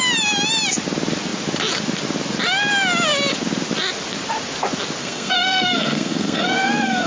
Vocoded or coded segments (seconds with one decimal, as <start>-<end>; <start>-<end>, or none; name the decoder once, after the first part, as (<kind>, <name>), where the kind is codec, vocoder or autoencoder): 5.0-7.1 (codec, SNAC)